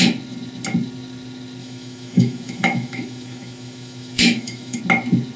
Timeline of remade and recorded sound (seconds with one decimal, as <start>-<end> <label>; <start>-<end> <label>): 0.0-1.6 recorded; 1.6-4.8 remade; 4.8-5.4 recorded